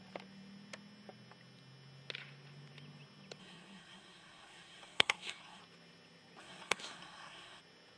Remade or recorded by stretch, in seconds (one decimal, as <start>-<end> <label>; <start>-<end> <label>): 0.0-3.4 recorded; 3.4-5.6 remade; 5.6-6.4 recorded; 6.4-7.6 remade; 7.6-8.0 recorded